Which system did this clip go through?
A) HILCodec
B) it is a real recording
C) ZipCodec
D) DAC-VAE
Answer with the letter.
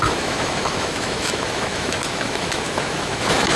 D